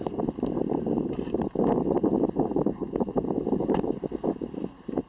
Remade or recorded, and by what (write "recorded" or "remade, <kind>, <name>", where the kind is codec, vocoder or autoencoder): remade, vocoder, BigVGAN v2